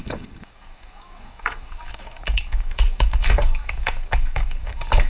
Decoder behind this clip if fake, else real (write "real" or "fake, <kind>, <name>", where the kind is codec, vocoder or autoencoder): fake, codec, DAC